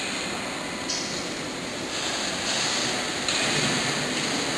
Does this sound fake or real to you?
real